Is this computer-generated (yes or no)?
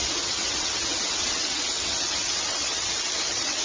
yes